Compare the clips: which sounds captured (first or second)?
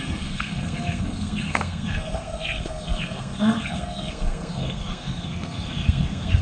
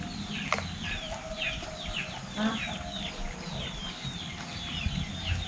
second